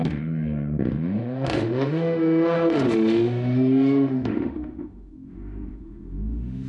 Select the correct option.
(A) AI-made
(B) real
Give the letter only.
A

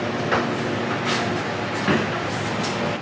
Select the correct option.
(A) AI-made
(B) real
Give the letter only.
B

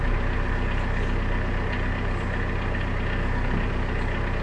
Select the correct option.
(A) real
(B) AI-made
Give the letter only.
A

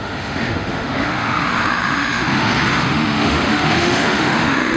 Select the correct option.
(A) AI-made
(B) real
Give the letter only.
A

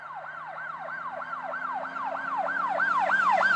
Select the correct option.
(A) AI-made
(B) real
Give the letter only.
B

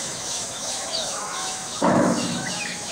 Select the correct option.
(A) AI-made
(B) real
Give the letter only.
A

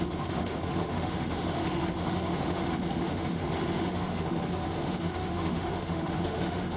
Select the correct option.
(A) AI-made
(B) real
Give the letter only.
A